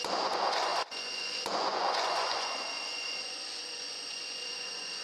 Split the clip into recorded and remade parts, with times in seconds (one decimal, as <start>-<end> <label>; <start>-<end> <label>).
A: 0.0-5.0 remade